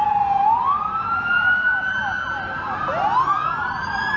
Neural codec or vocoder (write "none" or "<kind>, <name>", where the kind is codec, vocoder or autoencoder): none